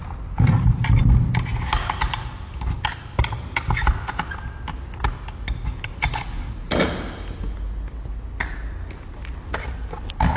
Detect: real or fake real